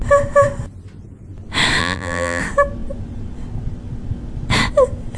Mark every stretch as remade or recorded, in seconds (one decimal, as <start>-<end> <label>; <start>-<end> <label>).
0.0-1.8 recorded; 1.8-2.4 remade; 2.4-5.2 recorded